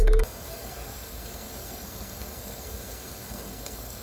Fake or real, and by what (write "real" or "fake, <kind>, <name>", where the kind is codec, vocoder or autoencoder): fake, codec, SNAC